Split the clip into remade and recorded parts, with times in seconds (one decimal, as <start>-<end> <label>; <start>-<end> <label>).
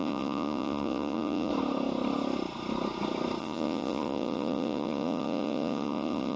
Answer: 0.0-1.5 remade; 1.5-3.4 recorded; 3.4-6.4 remade